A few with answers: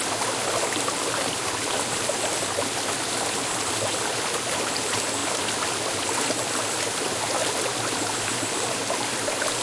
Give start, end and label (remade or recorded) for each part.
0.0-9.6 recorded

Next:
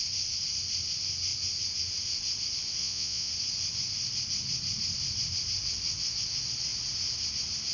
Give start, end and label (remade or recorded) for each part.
0.0-2.8 recorded; 2.8-3.3 remade; 3.3-7.7 recorded

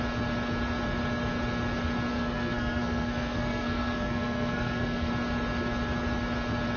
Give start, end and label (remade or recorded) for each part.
0.0-2.1 recorded; 2.1-5.1 remade; 5.1-6.8 recorded

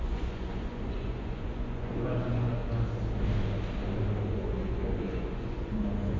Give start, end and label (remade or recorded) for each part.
0.0-2.6 remade; 2.6-4.3 recorded; 4.3-6.2 remade

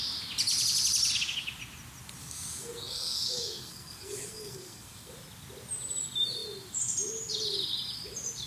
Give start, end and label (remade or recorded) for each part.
0.0-2.2 recorded; 2.2-5.1 remade; 5.1-8.5 recorded